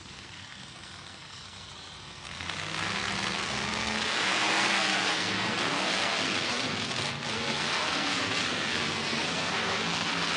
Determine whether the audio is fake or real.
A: fake